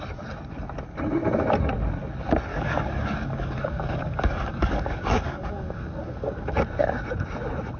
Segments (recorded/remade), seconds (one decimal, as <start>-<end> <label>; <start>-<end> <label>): 0.0-2.5 recorded; 2.5-6.6 remade; 6.6-7.8 recorded